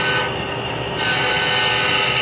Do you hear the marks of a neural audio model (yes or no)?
no